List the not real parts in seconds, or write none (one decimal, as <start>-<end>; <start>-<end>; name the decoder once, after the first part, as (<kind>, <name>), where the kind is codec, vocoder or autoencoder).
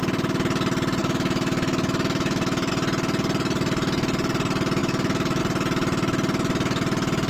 1.0-2.7 (autoencoder, DAC-VAE); 4.8-5.4